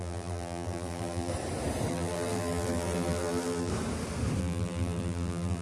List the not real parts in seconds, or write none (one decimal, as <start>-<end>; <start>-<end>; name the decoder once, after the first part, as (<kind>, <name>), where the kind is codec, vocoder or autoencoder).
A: 0.0-1.3 (vocoder, BigVGAN v2); 1.9-3.7; 4.4-5.6